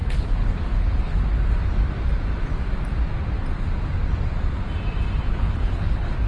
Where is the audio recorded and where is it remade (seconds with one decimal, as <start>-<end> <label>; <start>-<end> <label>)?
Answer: 0.0-1.2 remade; 1.2-5.3 recorded; 5.3-6.3 remade